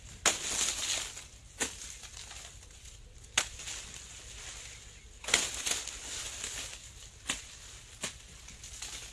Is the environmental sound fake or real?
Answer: real